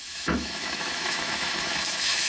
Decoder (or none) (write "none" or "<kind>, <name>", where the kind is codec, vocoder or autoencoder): autoencoder, DAC-VAE